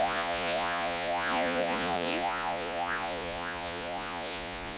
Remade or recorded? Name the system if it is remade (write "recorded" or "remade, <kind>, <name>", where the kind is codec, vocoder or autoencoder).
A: remade, vocoder, Vocos